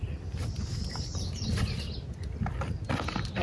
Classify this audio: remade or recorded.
recorded